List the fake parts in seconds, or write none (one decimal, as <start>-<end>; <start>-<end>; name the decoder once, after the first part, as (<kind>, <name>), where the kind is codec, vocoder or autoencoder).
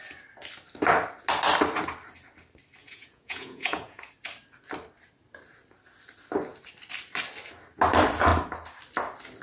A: 2.8-4.1 (vocoder, Vocos)